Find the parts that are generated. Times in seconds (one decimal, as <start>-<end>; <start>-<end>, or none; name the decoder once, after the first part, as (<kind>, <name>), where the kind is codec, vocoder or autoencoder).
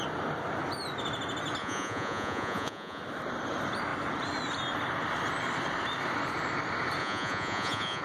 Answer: 1.6-3.0 (vocoder, Vocos); 7.0-8.0